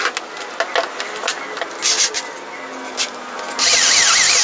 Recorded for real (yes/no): yes